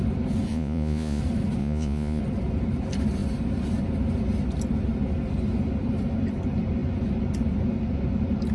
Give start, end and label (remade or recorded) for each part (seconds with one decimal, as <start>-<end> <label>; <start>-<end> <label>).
0.0-0.5 recorded; 0.5-1.2 remade; 1.2-1.6 recorded; 1.6-2.2 remade; 2.2-8.5 recorded